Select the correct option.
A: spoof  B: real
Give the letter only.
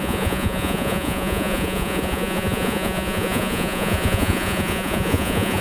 A